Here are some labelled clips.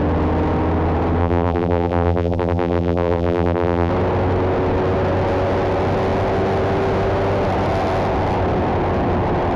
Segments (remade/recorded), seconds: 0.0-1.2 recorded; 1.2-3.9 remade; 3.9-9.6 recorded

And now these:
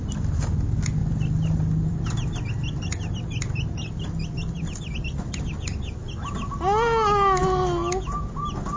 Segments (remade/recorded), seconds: 0.0-1.0 recorded; 1.0-5.0 remade; 5.0-8.8 recorded

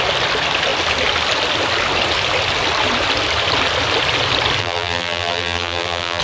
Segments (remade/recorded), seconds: 0.0-4.6 recorded; 4.6-6.2 remade

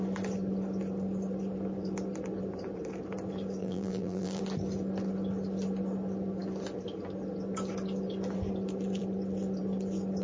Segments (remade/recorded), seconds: 0.0-3.6 recorded; 3.6-4.4 remade; 4.4-10.2 recorded

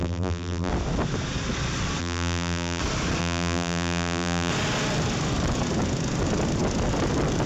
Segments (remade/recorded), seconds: 0.0-0.7 remade; 0.7-2.0 recorded; 2.0-2.8 remade; 2.8-3.2 recorded; 3.2-4.5 remade; 4.5-7.5 recorded